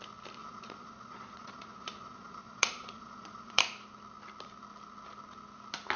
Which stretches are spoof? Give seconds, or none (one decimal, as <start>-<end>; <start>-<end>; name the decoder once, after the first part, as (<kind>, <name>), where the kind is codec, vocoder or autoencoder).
0.4-3.6 (vocoder, Vocos)